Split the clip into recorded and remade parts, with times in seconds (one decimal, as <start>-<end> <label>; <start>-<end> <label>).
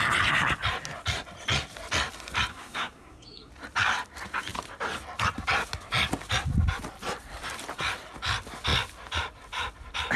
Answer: 0.0-2.5 recorded; 2.5-3.5 remade; 3.5-10.2 recorded